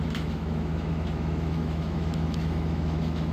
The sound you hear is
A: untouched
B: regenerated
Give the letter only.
B